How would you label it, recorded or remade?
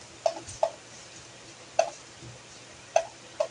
recorded